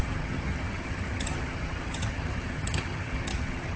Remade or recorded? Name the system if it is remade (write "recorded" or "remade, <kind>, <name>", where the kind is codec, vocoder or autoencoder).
remade, vocoder, HiFi-GAN